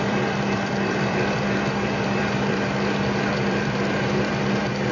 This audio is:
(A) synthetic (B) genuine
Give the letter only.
A